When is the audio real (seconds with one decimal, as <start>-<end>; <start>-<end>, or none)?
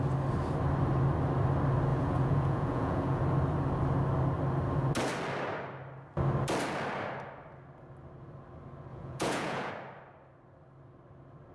0.0-1.9; 3.2-8.9; 9.7-11.5